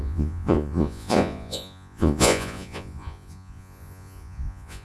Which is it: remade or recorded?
remade